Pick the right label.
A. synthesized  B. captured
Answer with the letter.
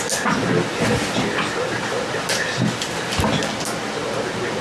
B